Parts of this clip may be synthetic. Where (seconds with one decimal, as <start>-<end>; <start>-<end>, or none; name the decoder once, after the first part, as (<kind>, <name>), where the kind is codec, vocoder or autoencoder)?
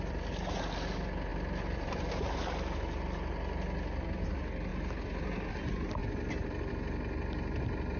1.3-2.1 (vocoder, BigVGAN v2); 4.7-5.5; 6.0-6.7